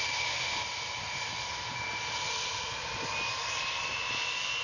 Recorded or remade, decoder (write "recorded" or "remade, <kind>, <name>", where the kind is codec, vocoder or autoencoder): recorded